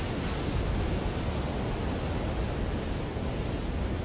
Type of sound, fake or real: real